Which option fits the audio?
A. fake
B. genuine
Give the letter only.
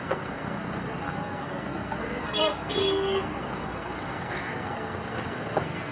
A